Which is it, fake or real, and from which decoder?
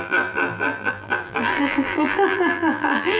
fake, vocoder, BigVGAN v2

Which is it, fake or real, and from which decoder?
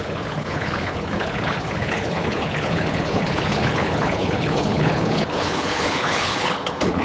fake, codec, HILCodec